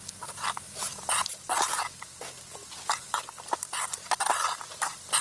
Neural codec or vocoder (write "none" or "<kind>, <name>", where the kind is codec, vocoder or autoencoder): none